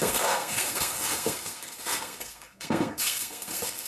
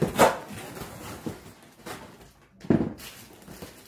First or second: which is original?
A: second